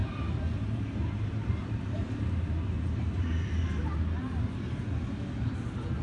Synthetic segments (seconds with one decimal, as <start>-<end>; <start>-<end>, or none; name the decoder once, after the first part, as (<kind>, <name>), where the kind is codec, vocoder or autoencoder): 0.0-3.6 (vocoder, BigVGAN v2)